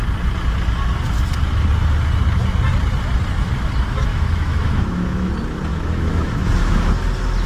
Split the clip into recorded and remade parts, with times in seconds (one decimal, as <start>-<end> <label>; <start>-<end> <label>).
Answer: 0.0-4.1 recorded; 4.1-5.3 remade; 5.3-5.7 recorded; 5.7-6.9 remade; 6.9-7.5 recorded